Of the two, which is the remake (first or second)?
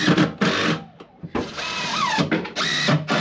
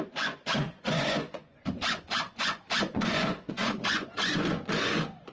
second